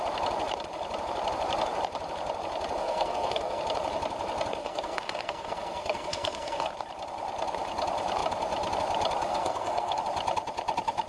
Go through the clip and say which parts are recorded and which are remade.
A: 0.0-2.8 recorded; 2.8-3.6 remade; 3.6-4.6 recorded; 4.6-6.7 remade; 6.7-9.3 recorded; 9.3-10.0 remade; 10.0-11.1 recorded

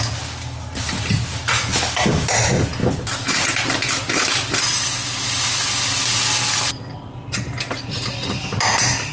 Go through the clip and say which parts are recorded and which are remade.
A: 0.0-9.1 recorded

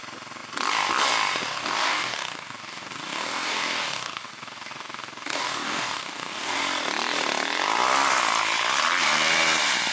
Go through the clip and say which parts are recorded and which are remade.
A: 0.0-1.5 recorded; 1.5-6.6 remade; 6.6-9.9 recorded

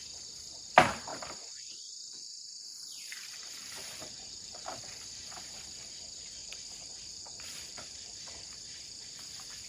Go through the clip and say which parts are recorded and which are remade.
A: 0.0-3.2 recorded; 3.2-5.5 remade; 5.5-6.4 recorded; 6.4-9.1 remade; 9.1-9.7 recorded

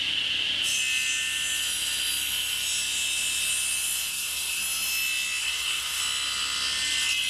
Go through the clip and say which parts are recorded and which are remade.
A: 0.0-4.1 recorded; 4.1-4.6 remade; 4.6-5.4 recorded; 5.4-6.0 remade; 6.0-7.3 recorded

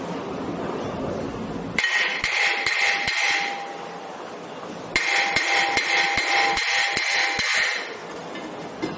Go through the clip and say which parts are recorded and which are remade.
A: 0.0-9.0 recorded

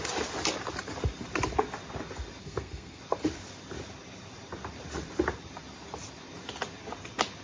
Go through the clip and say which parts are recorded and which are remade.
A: 0.0-2.4 recorded; 2.4-3.0 remade; 3.0-7.4 recorded

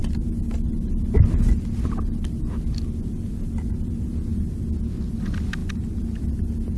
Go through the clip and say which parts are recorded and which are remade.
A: 0.0-6.8 recorded